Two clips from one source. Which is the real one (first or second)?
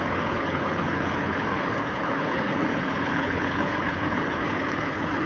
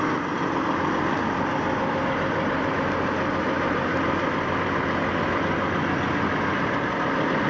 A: second